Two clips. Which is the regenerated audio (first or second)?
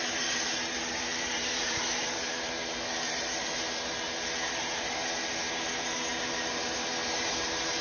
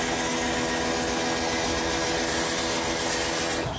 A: first